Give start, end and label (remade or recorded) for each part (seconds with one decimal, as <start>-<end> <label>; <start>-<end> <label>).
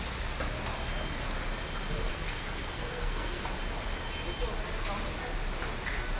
0.0-2.1 recorded; 2.1-3.4 remade; 3.4-6.2 recorded